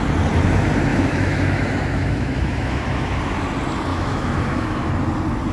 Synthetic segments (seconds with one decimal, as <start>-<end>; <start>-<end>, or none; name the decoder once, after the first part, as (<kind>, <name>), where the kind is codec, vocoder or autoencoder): 0.9-3.2 (autoencoder, DAC-VAE); 3.9-4.9